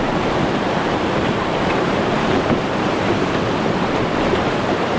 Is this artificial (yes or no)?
yes